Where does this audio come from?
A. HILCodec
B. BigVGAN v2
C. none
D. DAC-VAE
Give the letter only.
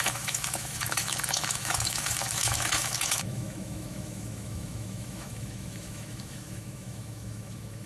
D